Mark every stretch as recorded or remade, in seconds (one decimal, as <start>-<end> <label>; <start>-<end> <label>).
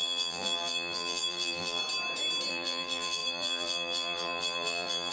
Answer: 0.0-1.8 remade; 1.8-2.5 recorded; 2.5-5.1 remade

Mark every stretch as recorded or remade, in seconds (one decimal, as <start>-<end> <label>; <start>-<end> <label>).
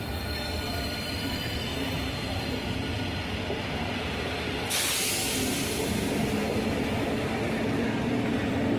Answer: 0.0-1.7 recorded; 1.7-2.5 remade; 2.5-8.8 recorded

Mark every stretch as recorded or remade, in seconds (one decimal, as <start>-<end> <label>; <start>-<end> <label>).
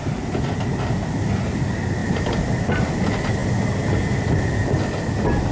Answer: 0.0-2.0 recorded; 2.0-2.6 remade; 2.6-5.5 recorded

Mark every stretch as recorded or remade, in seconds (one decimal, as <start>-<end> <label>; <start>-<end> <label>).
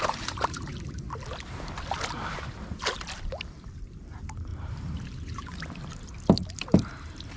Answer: 0.0-0.7 remade; 0.7-3.8 recorded; 3.8-6.1 remade; 6.1-6.8 recorded; 6.8-7.4 remade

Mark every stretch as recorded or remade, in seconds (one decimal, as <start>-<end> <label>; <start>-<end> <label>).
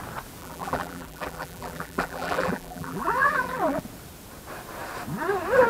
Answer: 0.0-0.4 recorded; 0.4-3.8 remade; 3.8-5.7 recorded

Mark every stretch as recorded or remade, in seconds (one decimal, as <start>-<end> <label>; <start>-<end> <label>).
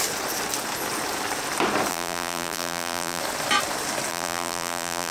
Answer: 0.0-1.9 recorded; 1.9-3.2 remade; 3.2-4.1 recorded; 4.1-5.1 remade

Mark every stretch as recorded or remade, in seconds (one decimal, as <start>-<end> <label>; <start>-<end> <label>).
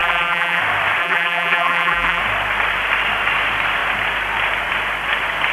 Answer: 0.0-0.6 remade; 0.6-1.0 recorded; 1.0-2.2 remade; 2.2-5.5 recorded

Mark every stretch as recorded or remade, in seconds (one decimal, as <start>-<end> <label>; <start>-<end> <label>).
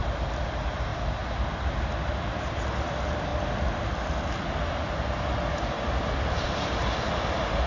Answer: 0.0-0.9 recorded; 0.9-1.8 remade; 1.8-7.7 recorded